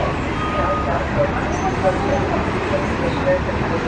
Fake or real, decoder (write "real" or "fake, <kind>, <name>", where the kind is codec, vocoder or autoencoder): real